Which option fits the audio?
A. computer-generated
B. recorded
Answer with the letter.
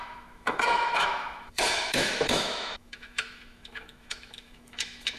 A